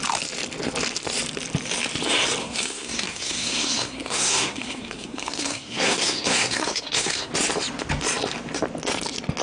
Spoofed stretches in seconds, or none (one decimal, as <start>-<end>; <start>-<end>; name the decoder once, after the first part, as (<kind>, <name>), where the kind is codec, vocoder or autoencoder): 2.4-7.3 (codec, SNAC)